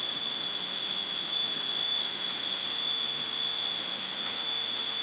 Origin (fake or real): fake